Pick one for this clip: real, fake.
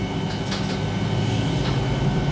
real